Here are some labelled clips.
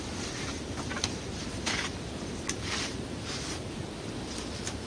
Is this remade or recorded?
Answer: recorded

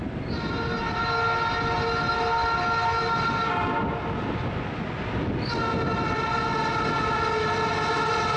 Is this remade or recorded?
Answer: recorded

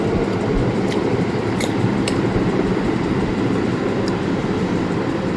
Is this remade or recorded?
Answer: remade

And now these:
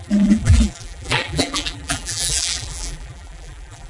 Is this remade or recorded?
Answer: remade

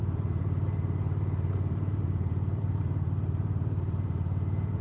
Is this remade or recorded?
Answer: remade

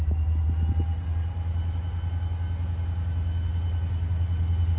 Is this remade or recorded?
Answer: recorded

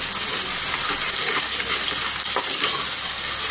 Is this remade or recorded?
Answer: recorded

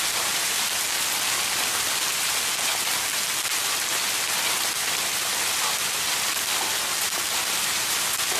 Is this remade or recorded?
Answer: recorded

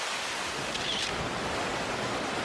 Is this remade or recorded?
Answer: recorded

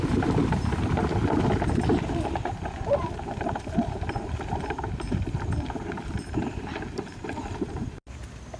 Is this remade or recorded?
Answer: remade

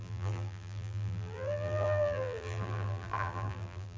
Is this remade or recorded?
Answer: remade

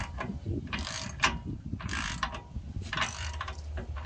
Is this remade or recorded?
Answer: recorded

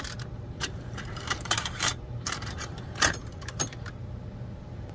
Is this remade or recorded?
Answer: remade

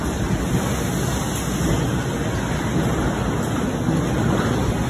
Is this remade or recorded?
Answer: recorded